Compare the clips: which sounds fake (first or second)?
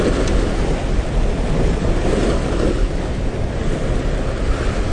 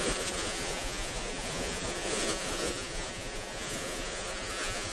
second